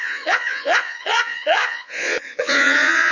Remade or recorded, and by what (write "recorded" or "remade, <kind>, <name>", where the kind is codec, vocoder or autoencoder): remade, vocoder, Vocos